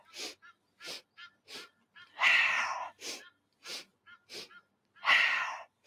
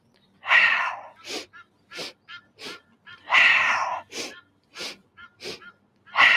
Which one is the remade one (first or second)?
second